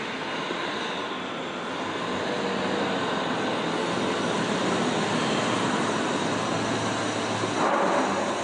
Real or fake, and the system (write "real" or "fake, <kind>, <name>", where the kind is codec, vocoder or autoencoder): real